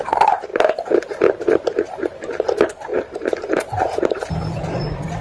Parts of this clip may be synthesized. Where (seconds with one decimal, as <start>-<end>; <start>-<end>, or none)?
2.9-4.0